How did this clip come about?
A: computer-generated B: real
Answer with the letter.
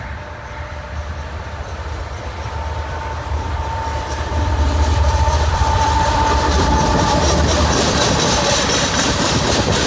A